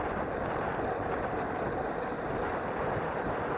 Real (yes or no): yes